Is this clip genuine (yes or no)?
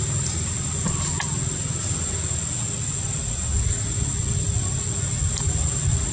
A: yes